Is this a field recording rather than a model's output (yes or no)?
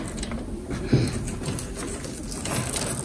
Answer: yes